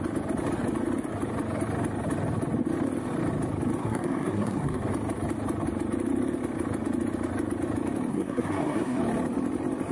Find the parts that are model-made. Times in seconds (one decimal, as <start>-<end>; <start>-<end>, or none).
3.8-4.8; 8.1-9.0